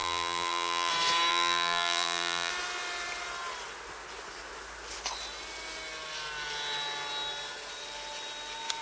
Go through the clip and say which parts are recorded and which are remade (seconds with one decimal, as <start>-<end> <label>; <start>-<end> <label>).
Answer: 0.0-0.9 remade; 0.9-1.3 recorded; 1.3-2.5 remade; 2.5-8.8 recorded